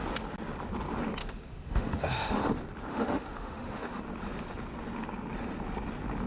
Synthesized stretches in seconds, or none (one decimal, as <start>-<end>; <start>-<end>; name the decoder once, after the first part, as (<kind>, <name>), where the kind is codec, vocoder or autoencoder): 1.2-2.4 (autoencoder, DAC-VAE); 2.9-4.0